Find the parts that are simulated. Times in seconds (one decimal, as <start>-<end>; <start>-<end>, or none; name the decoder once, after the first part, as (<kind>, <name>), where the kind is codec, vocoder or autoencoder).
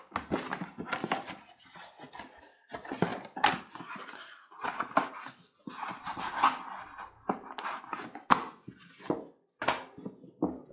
none